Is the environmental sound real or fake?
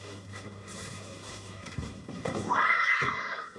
fake